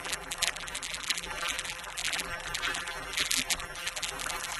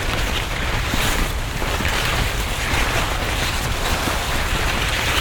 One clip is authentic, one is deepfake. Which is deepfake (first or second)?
first